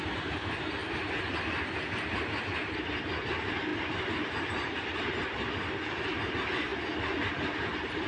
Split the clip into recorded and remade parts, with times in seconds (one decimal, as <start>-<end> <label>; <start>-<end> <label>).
0.0-8.1 recorded